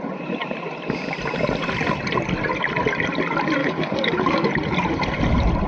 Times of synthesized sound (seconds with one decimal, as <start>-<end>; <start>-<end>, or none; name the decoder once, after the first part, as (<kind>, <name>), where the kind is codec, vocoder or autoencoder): 3.6-4.5 (codec, DAC)